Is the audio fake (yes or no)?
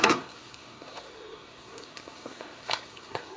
yes